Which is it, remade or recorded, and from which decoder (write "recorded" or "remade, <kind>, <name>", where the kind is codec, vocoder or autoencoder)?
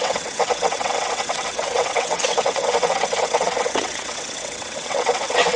remade, vocoder, WaveNeXt